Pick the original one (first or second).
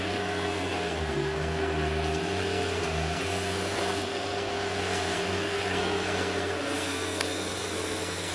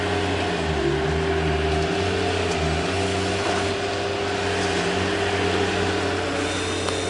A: second